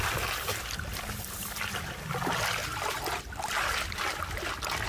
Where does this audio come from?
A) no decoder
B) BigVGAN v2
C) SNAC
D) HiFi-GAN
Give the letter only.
A